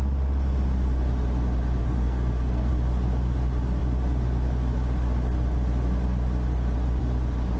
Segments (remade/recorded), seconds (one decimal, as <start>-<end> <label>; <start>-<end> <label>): 0.0-1.8 recorded; 1.8-2.7 remade; 2.7-7.6 recorded